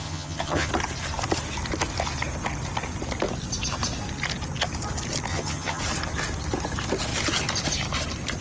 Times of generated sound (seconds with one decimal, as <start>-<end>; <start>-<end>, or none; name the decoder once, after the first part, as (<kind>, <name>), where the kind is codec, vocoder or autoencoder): 0.0-0.7 (vocoder, HiFi-GAN); 5.3-5.8